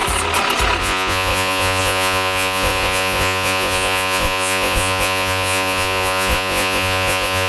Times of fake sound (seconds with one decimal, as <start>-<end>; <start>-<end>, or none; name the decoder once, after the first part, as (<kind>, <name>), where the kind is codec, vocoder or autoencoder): 0.8-7.5 (vocoder, Vocos)